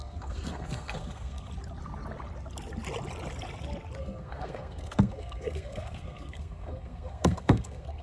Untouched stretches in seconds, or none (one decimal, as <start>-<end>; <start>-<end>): 1.5-4.0